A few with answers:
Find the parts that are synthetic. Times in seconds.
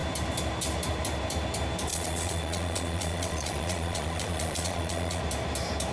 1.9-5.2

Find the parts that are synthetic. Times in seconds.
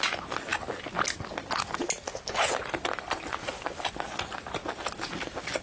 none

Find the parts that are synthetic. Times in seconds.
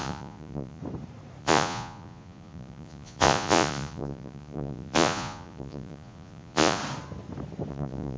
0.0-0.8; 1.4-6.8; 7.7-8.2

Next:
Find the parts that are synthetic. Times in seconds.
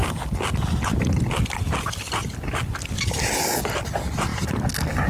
none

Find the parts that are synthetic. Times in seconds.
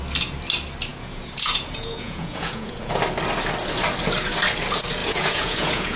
0.9-2.9; 5.0-6.0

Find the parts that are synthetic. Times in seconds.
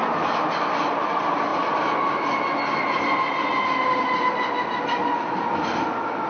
none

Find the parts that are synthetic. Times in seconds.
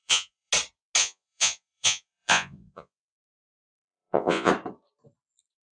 0.0-0.5; 1.0-4.5